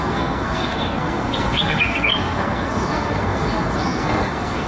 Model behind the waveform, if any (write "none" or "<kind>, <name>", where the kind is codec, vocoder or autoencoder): codec, SNAC